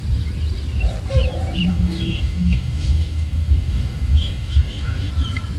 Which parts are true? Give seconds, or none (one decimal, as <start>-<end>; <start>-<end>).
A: 0.0-1.7; 5.1-5.6